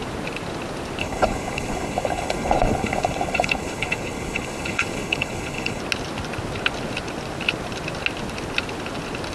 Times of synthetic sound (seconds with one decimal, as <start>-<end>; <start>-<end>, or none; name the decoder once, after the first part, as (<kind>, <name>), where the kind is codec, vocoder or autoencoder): 1.0-5.8 (codec, HILCodec)